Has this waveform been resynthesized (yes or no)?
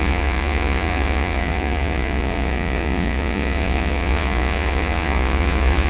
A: yes